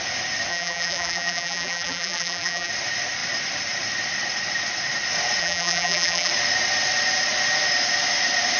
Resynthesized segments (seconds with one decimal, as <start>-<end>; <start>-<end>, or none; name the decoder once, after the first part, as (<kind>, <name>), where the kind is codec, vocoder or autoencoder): 0.5-2.7 (vocoder, BigVGAN v2); 5.4-6.3